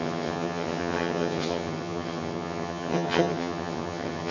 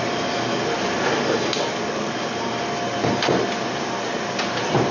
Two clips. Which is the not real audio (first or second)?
first